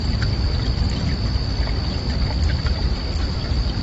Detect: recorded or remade recorded